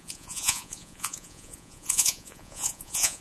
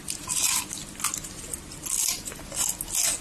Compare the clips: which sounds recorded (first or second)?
second